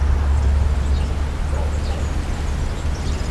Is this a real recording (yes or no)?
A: yes